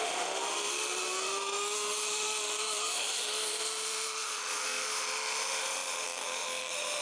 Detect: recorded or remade remade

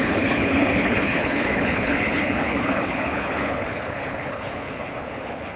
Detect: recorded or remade remade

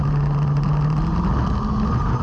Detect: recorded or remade recorded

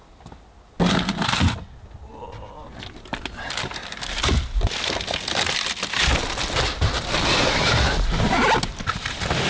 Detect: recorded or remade recorded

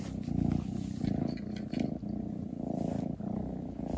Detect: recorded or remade recorded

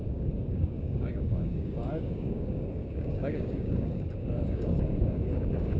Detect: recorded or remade remade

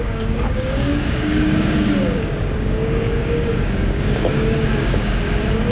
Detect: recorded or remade remade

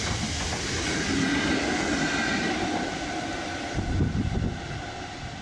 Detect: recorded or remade recorded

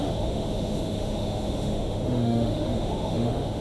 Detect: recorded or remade remade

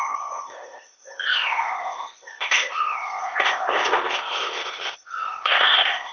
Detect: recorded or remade remade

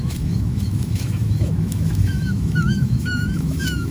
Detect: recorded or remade remade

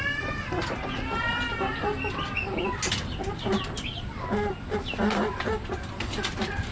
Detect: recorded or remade recorded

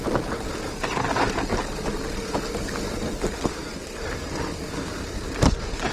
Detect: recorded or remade recorded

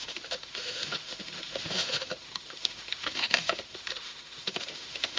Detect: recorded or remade remade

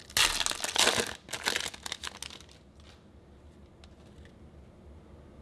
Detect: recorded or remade recorded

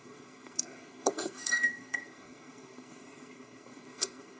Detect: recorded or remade remade